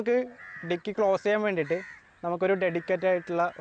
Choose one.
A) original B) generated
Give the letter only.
A